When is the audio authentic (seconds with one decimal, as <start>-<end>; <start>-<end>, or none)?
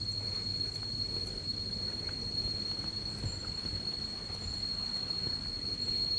0.0-6.2